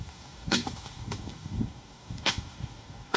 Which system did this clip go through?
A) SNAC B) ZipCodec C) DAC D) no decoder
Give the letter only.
C